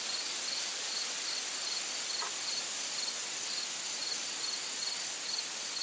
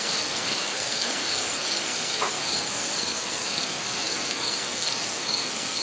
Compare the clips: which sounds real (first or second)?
first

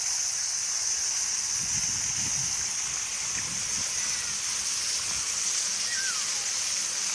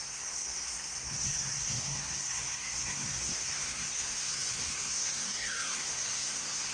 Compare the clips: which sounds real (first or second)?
first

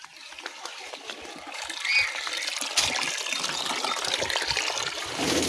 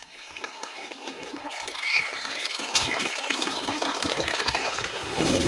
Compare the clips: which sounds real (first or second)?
first